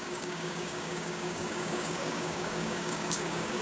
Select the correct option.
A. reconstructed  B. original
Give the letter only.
A